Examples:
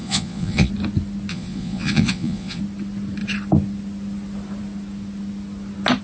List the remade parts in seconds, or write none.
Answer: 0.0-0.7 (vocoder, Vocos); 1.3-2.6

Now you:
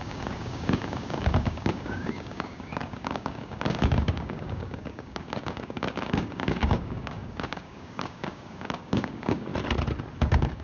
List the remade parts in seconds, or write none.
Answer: 0.0-9.5 (codec, DAC); 10.2-10.6

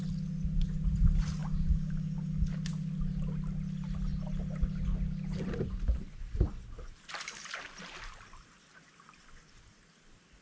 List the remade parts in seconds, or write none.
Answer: none

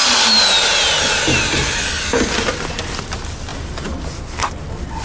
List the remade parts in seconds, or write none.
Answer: none

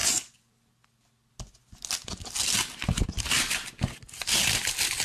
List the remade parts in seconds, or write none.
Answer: none